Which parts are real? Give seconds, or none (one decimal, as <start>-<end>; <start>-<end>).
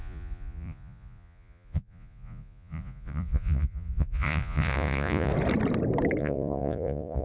5.3-6.2